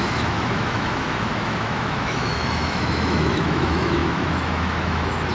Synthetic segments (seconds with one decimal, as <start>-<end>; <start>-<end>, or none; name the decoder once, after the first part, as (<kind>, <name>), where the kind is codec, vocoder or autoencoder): 0.0-5.3 (autoencoder, DAC-VAE)